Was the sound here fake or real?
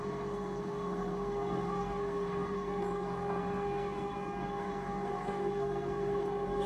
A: fake